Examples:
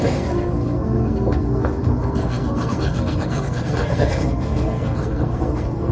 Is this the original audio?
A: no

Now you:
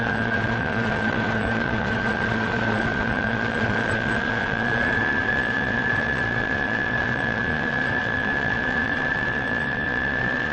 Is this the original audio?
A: no